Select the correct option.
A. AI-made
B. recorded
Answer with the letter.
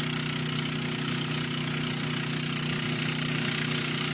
B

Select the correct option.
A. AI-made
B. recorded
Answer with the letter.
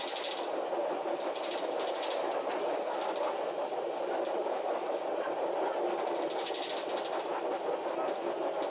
B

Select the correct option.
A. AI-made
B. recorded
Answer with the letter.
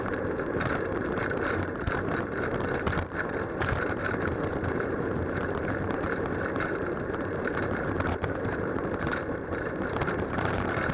A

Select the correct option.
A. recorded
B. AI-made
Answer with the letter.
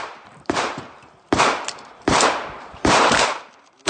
B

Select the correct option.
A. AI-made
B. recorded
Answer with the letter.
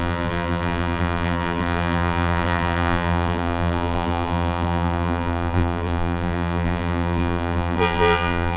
A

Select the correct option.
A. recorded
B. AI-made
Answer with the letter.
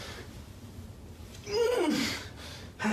B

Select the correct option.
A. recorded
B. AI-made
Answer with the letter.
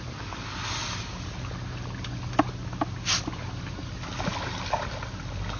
A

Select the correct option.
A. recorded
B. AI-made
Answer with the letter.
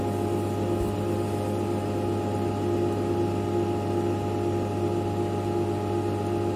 A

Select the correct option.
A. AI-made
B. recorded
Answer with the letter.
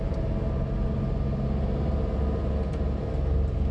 B